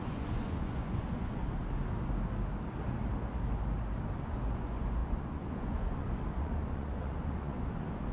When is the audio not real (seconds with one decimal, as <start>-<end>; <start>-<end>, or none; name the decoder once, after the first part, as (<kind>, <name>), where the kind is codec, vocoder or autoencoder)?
0.0-1.4 (vocoder, Vocos); 4.2-8.1